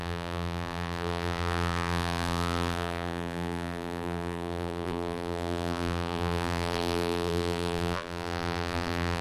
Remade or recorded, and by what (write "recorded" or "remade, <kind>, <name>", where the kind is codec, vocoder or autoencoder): remade, vocoder, BigVGAN v2